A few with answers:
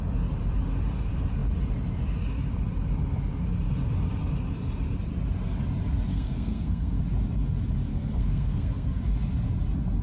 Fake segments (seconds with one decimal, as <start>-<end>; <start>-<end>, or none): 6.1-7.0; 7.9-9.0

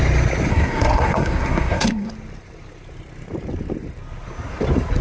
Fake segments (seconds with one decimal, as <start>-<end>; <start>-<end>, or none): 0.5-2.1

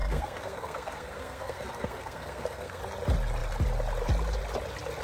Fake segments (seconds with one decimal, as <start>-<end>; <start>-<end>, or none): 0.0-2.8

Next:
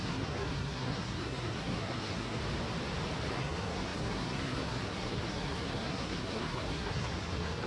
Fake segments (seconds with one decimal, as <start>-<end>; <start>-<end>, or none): 0.0-2.4; 3.3-7.7

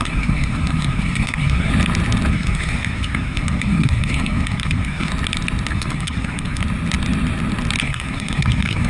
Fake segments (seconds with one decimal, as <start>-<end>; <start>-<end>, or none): 0.0-1.7; 2.3-5.1; 5.7-6.6; 7.8-8.9